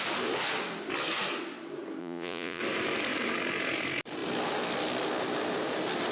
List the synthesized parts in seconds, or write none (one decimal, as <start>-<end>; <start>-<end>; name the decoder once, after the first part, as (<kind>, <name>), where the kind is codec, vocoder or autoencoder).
2.0-2.6 (vocoder, Vocos)